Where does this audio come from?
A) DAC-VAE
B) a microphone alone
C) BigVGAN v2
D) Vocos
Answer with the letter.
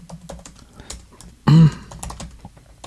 B